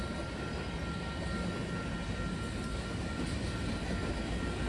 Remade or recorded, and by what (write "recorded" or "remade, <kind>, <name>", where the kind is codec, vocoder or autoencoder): recorded